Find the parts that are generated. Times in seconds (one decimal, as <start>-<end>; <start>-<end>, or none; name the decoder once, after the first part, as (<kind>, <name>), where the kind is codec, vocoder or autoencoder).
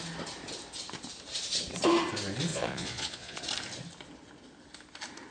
2.5-3.4 (vocoder, Vocos)